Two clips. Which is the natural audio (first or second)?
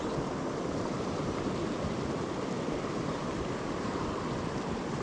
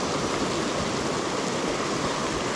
second